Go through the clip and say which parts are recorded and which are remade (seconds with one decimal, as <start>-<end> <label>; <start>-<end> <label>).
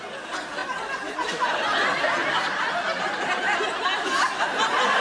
0.0-0.6 recorded; 0.6-1.3 remade; 1.3-5.0 recorded